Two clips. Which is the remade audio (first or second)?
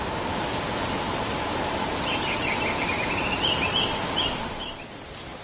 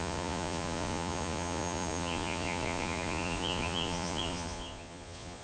second